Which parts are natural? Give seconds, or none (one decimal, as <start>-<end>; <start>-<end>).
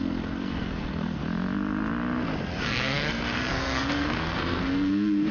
1.2-2.6